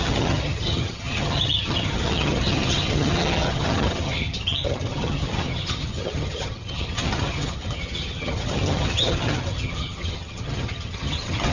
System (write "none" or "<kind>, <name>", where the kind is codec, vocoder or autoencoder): vocoder, HiFi-GAN